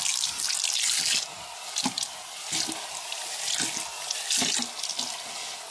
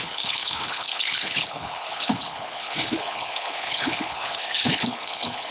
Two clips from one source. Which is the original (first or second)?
first